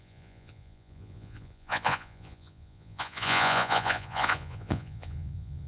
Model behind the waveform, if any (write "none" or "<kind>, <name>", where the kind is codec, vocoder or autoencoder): vocoder, Vocos